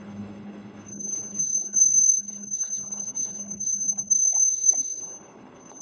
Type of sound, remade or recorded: remade